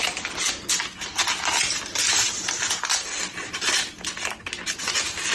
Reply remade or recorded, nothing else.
recorded